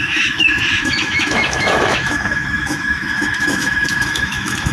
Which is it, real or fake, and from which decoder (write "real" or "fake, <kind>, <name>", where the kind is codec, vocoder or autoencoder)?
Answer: fake, autoencoder, DAC-VAE